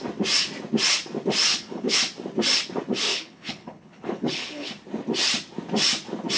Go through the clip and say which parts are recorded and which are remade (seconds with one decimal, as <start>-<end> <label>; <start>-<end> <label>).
0.0-1.5 recorded; 1.5-2.0 remade; 2.0-3.1 recorded; 3.1-4.7 remade; 4.7-6.4 recorded

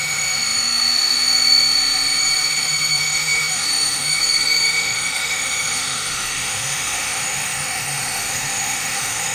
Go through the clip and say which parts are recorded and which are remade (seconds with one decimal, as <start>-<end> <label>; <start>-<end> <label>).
0.0-9.3 remade

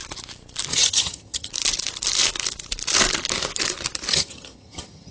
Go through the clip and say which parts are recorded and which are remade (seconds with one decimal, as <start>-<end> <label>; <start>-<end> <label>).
0.0-0.7 recorded; 0.7-1.5 remade; 1.5-4.1 recorded; 4.1-5.1 remade